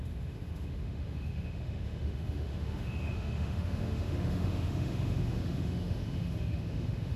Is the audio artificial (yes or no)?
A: yes